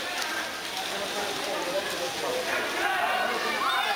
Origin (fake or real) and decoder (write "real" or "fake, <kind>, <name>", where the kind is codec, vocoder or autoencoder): real